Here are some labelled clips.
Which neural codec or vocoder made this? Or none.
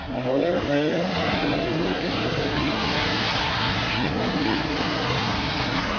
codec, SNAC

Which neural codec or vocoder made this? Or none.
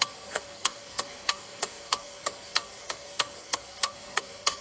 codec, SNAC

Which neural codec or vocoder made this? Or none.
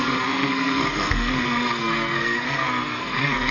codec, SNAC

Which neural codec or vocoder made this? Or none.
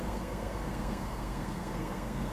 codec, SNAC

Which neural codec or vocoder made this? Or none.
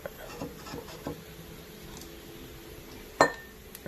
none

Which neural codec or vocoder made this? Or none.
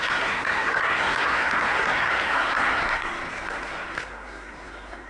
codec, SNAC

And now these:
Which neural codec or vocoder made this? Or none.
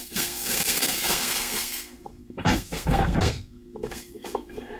codec, SNAC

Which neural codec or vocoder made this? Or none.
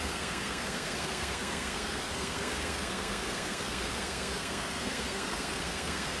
codec, SNAC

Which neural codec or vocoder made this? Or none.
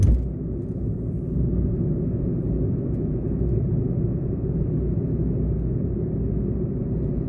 none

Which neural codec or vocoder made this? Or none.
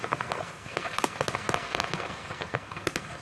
codec, SNAC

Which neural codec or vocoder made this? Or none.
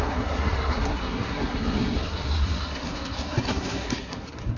codec, SNAC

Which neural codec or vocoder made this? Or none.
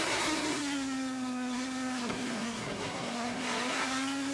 codec, SNAC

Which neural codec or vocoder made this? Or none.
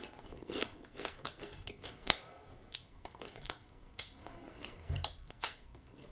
codec, SNAC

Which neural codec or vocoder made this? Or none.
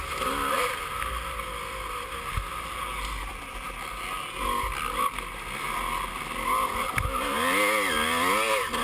none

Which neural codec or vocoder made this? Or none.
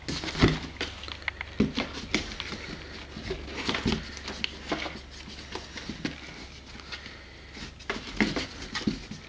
none